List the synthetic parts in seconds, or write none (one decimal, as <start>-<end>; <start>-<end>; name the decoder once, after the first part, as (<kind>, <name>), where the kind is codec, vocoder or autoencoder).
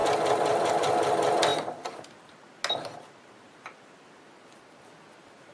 none